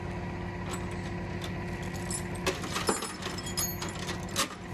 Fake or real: real